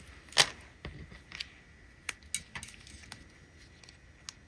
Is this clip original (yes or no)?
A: yes